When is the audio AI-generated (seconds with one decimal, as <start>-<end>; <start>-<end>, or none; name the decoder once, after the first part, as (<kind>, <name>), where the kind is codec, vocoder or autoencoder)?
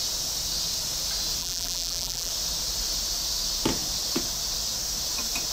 1.4-2.3 (vocoder, BigVGAN v2)